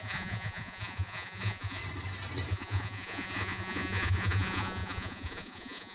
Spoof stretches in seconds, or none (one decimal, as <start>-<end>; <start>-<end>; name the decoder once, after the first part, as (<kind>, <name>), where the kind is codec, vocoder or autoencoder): 0.0-1.8 (vocoder, Vocos); 2.5-5.9